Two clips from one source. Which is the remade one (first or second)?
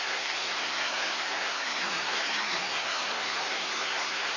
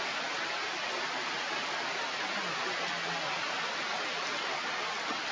first